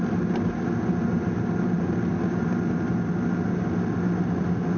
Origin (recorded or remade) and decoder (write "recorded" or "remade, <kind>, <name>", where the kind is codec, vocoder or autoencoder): recorded